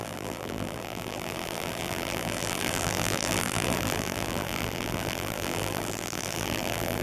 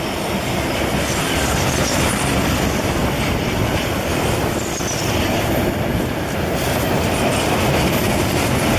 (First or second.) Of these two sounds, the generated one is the first